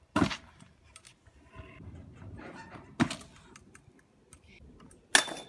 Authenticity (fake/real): real